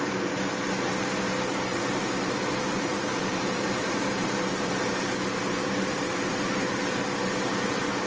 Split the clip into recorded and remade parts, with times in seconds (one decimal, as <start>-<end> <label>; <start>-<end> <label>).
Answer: 0.0-1.7 recorded; 1.7-4.7 remade; 4.7-5.6 recorded; 5.6-6.8 remade; 6.8-8.1 recorded

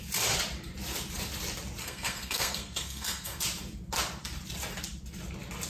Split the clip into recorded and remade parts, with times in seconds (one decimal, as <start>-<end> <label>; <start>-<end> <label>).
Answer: 0.0-1.8 recorded; 1.8-3.4 remade; 3.4-5.7 recorded

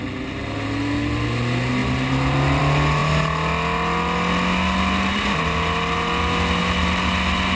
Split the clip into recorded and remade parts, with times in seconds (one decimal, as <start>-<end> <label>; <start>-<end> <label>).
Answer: 0.0-7.5 recorded

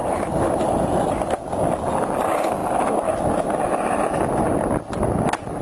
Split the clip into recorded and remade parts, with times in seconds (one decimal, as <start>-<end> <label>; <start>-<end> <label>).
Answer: 0.0-5.6 recorded